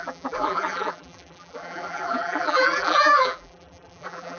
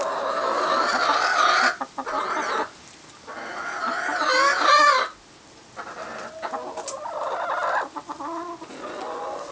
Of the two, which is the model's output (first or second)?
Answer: first